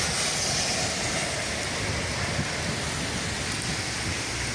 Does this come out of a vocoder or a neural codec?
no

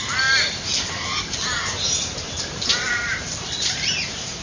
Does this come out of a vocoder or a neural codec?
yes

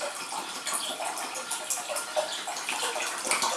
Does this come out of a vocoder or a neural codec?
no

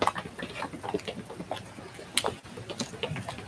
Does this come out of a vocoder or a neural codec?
no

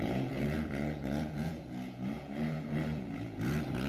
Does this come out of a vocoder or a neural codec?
yes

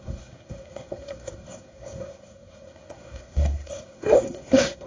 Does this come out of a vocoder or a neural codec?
yes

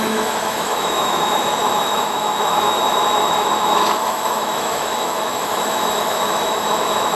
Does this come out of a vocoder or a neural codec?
yes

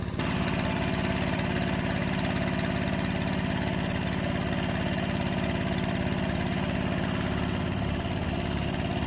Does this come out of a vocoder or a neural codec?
no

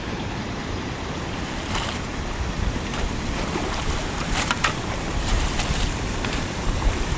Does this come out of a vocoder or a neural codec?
yes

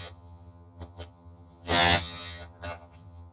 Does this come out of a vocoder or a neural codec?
yes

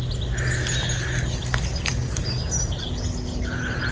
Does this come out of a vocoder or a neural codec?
no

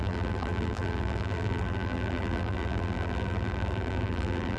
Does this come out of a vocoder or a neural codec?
yes